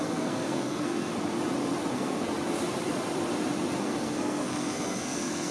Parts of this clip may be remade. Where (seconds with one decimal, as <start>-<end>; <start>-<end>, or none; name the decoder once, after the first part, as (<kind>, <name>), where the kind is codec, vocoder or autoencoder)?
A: 0.0-1.1 (codec, SNAC); 1.9-2.3; 3.8-5.5